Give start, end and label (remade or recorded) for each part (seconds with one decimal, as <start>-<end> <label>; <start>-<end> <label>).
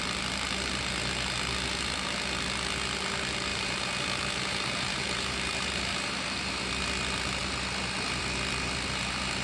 0.0-3.5 recorded; 3.5-6.7 remade; 6.7-9.4 recorded